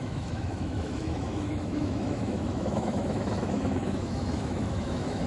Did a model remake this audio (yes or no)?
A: yes